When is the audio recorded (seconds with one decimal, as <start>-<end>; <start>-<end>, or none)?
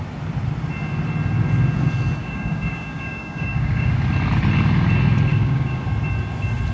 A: 0.0-2.2; 4.0-5.3; 5.8-6.7